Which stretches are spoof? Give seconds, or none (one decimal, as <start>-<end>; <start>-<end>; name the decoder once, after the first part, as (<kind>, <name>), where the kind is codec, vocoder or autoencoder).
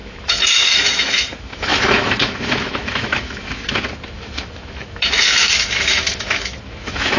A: 0.0-7.2 (autoencoder, DAC-VAE)